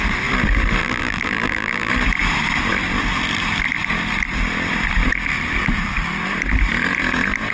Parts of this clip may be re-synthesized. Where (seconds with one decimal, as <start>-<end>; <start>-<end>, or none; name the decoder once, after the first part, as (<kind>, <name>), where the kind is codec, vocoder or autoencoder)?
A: 0.8-1.9 (vocoder, BigVGAN v2)